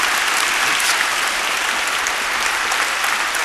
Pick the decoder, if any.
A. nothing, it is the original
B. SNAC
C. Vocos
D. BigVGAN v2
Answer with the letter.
A